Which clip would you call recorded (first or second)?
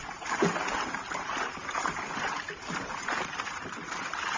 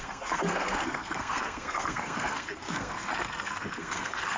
first